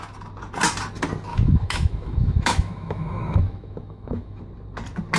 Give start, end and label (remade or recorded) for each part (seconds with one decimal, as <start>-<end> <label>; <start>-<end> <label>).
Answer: 0.0-1.3 recorded; 1.3-4.4 remade; 4.4-5.2 recorded